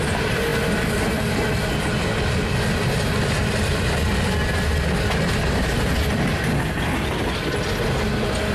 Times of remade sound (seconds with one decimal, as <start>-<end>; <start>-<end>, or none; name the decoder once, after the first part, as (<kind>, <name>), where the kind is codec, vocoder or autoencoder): none